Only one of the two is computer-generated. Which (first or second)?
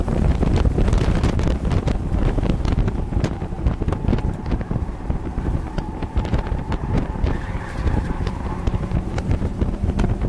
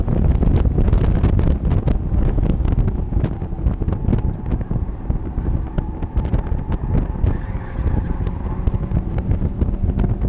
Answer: first